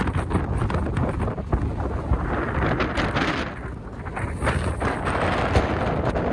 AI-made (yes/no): no